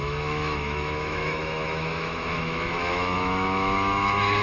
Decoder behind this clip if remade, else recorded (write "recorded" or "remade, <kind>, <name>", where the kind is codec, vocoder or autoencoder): remade, autoencoder, DAC-VAE